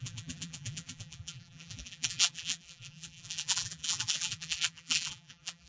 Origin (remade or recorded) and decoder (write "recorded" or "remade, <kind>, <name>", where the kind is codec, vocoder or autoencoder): remade, vocoder, BigVGAN v2